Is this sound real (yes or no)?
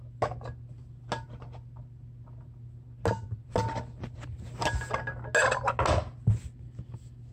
yes